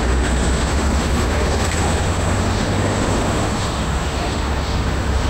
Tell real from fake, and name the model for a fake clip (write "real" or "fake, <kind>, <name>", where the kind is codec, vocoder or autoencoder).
fake, autoencoder, DAC-VAE